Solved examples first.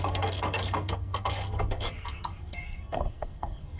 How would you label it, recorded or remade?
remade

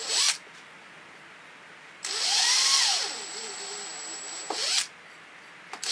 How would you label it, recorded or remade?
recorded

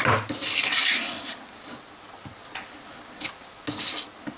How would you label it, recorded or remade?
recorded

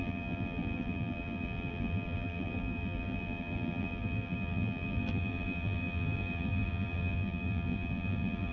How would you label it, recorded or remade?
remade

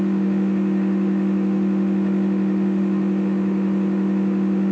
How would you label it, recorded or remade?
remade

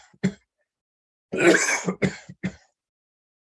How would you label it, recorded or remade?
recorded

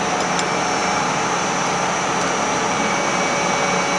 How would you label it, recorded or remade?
recorded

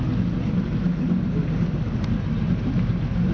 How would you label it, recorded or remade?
recorded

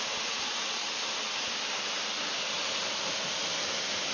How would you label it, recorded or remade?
recorded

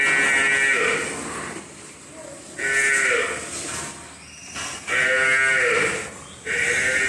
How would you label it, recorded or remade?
recorded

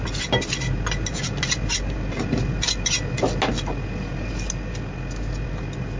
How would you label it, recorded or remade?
recorded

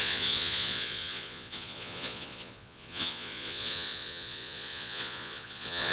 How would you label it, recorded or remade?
remade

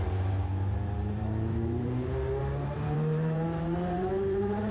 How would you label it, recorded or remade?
remade